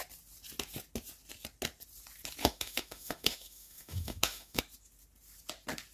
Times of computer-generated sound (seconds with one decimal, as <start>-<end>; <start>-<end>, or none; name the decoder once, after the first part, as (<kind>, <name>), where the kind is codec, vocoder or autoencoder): 2.4-4.6 (autoencoder, DAC-VAE)